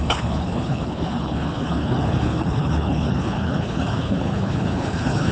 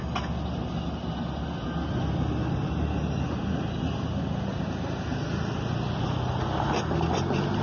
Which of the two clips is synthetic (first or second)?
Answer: first